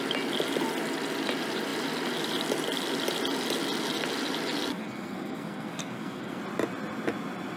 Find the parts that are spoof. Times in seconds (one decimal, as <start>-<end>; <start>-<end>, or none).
4.7-6.4